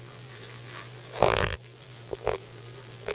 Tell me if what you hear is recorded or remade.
remade